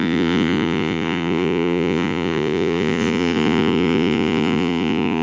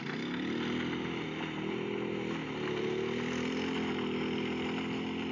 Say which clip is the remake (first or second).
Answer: first